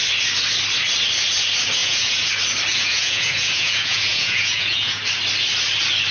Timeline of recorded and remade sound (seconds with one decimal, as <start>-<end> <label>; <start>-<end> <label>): 0.0-1.8 recorded; 1.8-2.3 remade; 2.3-2.7 recorded; 2.7-5.0 remade; 5.0-6.1 recorded